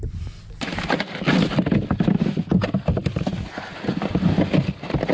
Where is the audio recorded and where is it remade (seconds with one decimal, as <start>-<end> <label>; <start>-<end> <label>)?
0.0-5.1 recorded